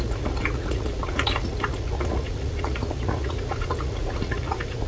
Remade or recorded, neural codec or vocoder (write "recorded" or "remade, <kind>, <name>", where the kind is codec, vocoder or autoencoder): remade, vocoder, Vocos